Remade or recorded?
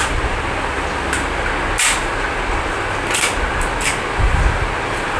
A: recorded